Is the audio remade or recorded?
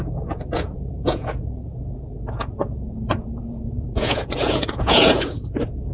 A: remade